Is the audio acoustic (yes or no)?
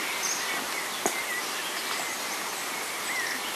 yes